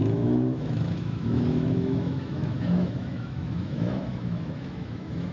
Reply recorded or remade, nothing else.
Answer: remade